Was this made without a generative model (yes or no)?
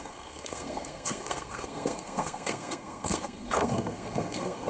no